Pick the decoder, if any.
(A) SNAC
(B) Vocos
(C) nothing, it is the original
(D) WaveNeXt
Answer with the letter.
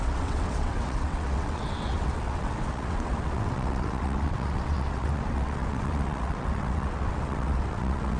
D